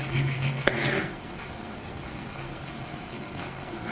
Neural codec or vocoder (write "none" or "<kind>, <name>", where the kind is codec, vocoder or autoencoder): codec, SNAC